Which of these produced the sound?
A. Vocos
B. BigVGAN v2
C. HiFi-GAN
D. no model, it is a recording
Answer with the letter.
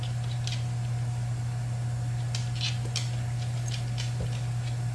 D